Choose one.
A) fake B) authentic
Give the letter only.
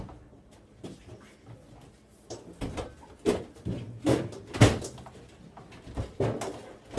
B